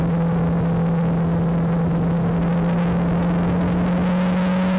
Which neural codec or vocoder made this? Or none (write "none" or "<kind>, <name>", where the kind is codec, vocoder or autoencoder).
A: none